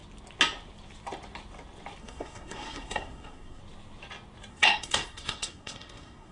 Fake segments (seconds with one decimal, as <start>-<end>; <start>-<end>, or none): 2.0-3.6; 4.5-6.3